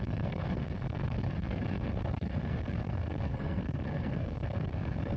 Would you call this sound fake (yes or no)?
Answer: yes